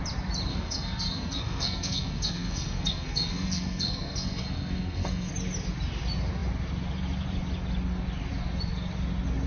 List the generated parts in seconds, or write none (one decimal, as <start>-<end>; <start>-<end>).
0.5-5.3